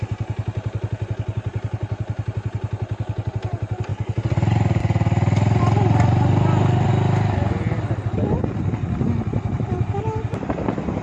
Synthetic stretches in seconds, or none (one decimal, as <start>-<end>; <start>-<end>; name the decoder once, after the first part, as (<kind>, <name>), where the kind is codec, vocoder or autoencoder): none